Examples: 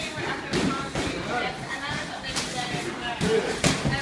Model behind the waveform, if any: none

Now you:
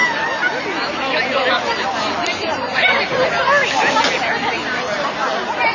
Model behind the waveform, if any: none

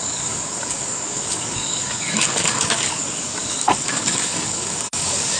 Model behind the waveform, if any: codec, DAC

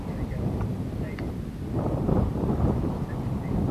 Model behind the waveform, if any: vocoder, BigVGAN v2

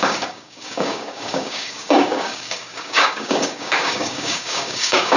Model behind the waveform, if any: codec, DAC